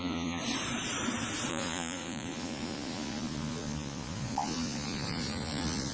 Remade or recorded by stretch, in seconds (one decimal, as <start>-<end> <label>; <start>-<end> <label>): 0.0-0.4 remade; 0.4-1.5 recorded; 1.5-5.9 remade